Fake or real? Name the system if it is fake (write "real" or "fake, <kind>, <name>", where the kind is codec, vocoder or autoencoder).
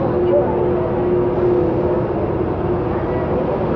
real